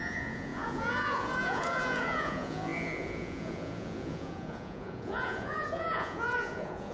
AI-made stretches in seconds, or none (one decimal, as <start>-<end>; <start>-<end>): 0.0-6.9